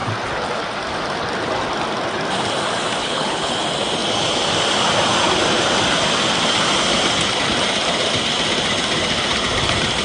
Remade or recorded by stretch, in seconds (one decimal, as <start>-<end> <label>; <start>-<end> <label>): 0.0-3.0 recorded; 3.0-3.6 remade; 3.6-10.0 recorded